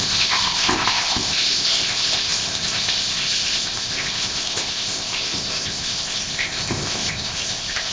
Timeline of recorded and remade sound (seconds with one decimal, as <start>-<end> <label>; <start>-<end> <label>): 0.0-7.9 remade